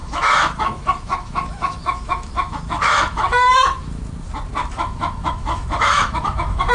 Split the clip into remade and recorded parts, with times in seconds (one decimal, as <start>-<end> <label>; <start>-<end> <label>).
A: 0.0-4.0 remade; 4.0-4.6 recorded; 4.6-6.7 remade